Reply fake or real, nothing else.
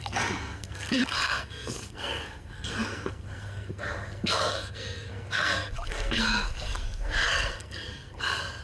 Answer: fake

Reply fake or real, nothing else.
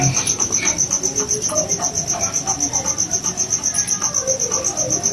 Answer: real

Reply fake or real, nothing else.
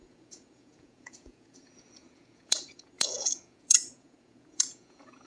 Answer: fake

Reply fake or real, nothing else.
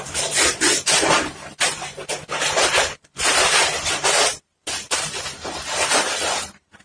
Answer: fake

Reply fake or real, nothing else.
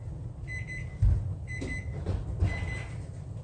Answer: real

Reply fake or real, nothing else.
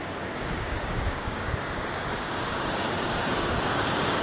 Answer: fake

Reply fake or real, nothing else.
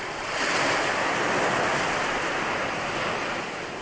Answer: real